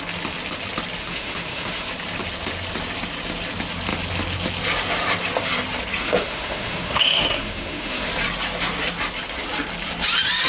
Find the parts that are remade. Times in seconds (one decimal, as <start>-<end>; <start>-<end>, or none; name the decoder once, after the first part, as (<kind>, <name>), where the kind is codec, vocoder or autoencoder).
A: 1.0-1.9 (autoencoder, DAC-VAE); 6.0-8.1